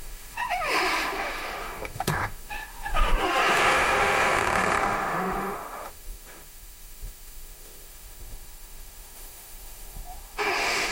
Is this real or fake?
fake